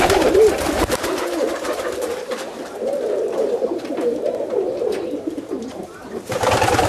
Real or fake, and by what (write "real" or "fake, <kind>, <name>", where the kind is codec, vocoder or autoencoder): fake, vocoder, BigVGAN v2